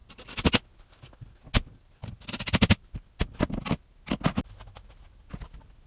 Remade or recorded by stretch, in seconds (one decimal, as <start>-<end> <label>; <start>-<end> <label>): 0.0-5.9 recorded